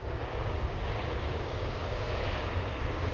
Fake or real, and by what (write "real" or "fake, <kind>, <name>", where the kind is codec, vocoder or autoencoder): fake, codec, DAC